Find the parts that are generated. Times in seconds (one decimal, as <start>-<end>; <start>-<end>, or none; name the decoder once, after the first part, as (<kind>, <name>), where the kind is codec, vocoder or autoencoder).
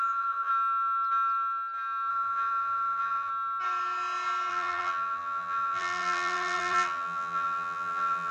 0.0-0.5 (vocoder, BigVGAN v2); 2.1-3.3; 4.5-8.3